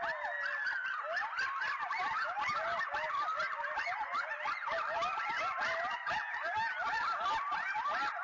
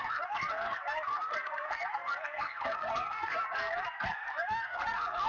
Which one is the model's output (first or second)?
second